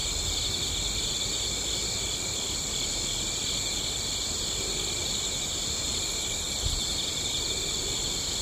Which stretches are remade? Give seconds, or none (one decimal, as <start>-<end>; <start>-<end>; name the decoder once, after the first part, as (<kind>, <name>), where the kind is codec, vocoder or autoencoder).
5.0-6.3 (vocoder, BigVGAN v2)